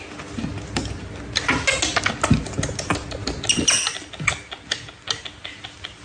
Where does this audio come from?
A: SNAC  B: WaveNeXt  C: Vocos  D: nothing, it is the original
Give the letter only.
D